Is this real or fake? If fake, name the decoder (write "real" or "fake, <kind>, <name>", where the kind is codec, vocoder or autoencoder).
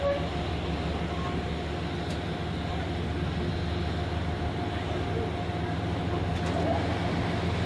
real